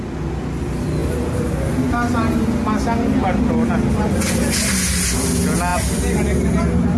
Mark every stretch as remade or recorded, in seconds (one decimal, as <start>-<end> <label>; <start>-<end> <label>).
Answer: 0.0-7.0 recorded